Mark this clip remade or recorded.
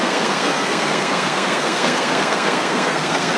remade